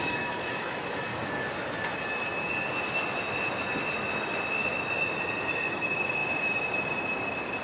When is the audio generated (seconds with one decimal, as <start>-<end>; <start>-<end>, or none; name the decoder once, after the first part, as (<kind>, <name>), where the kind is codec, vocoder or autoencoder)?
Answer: 0.0-1.1 (autoencoder, DAC-VAE); 5.7-6.2